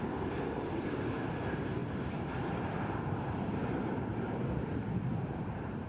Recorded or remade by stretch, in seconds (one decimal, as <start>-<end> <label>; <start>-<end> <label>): 0.0-5.9 remade